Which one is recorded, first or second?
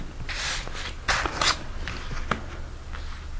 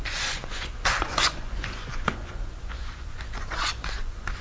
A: first